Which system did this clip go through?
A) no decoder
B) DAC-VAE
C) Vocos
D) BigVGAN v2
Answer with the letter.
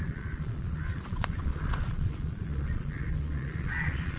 C